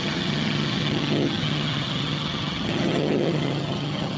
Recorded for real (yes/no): no